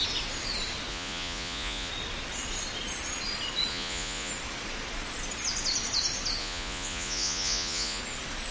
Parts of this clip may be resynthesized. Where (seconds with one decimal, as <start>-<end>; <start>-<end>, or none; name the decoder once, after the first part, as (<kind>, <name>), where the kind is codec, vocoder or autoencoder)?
0.9-1.9 (vocoder, Vocos); 3.7-4.3; 6.4-8.0